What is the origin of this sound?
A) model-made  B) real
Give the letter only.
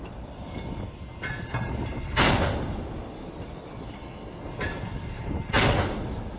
B